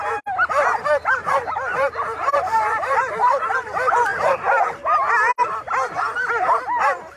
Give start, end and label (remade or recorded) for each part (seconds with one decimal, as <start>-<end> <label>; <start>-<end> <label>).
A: 0.0-1.2 recorded; 1.2-3.3 remade; 3.3-7.2 recorded